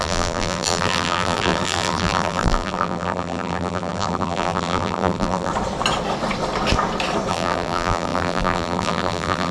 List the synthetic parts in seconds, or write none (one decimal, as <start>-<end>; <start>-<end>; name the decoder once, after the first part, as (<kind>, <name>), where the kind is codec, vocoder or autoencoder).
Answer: 0.0-5.5 (vocoder, BigVGAN v2); 7.3-9.5